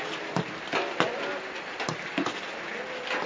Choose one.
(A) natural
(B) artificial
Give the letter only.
A